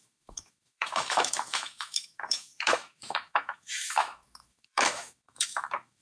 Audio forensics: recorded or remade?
remade